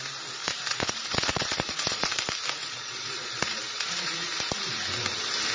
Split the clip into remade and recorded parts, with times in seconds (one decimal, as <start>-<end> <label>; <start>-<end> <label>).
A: 0.0-0.4 recorded; 0.4-2.2 remade; 2.2-2.6 recorded; 2.6-4.3 remade; 4.3-5.5 recorded